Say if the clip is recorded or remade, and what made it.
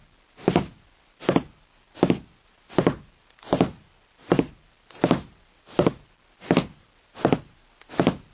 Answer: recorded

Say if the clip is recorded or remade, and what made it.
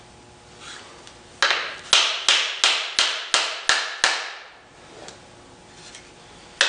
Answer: recorded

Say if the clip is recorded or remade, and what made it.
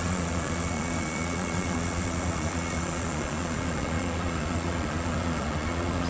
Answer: remade, vocoder, Vocos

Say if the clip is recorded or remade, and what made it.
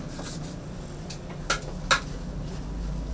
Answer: recorded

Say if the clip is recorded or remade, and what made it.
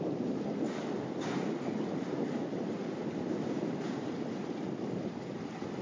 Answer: recorded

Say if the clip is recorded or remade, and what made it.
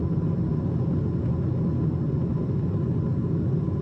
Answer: recorded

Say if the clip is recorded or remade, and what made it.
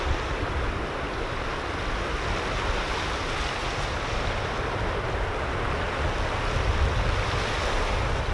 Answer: recorded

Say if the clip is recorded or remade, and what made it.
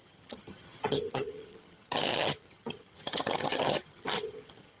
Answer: remade, vocoder, HiFi-GAN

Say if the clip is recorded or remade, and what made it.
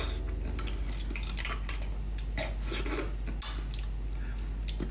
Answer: recorded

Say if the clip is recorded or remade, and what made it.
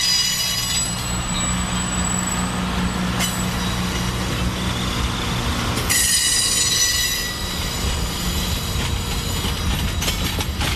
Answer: recorded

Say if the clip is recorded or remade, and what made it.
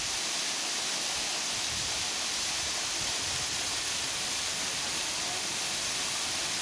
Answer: recorded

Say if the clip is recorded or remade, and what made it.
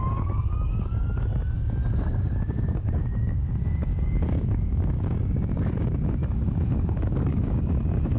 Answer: remade, codec, DAC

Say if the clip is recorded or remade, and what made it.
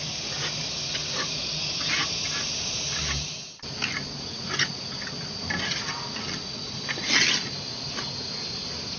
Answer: recorded